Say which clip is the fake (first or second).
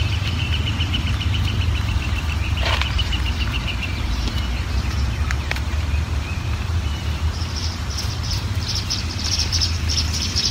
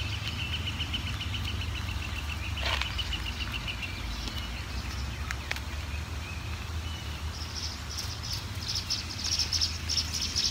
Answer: first